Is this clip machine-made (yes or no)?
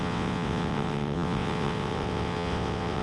yes